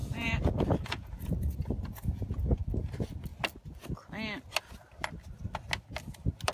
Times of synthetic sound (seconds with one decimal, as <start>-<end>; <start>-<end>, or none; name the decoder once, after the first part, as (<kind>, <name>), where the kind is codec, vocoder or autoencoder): 0.0-2.6 (vocoder, Vocos)